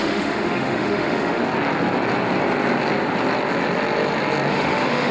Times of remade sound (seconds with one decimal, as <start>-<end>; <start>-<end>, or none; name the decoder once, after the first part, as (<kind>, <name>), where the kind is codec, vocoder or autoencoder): 0.0-1.4 (autoencoder, DAC-VAE); 4.5-5.1